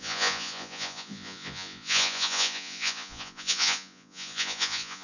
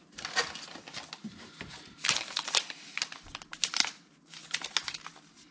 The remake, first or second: first